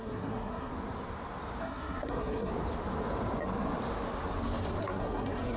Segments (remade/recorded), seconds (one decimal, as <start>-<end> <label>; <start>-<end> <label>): 0.0-0.7 remade; 0.7-1.6 recorded; 1.6-2.5 remade; 2.5-4.8 recorded; 4.8-5.6 remade

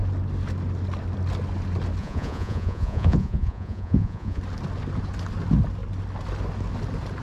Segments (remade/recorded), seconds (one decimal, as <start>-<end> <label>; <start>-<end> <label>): 0.0-2.0 recorded; 2.0-4.4 remade; 4.4-7.2 recorded